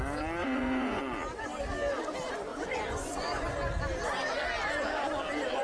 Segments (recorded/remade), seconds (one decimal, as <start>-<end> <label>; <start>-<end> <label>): 0.0-0.4 recorded; 0.4-1.0 remade; 1.0-2.5 recorded; 2.5-3.5 remade; 3.5-5.6 recorded